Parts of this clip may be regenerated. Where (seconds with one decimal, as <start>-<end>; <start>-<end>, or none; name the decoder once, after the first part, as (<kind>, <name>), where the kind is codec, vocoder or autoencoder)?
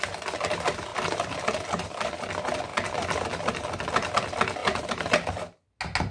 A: 0.9-2.1 (vocoder, BigVGAN v2); 4.6-5.3